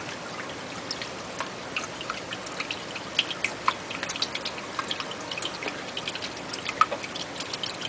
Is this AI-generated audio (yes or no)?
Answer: no